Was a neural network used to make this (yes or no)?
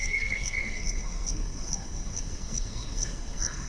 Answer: yes